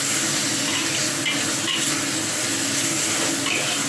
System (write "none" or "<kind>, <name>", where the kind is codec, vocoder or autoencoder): none